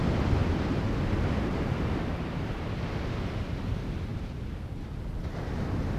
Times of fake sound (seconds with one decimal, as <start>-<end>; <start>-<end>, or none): 0.4-2.3; 4.1-5.2